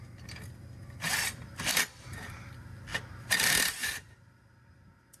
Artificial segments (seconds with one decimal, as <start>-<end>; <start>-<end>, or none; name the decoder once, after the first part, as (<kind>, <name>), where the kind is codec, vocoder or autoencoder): none